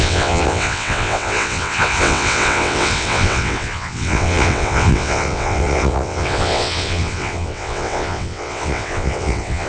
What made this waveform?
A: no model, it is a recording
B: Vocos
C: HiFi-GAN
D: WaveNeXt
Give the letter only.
D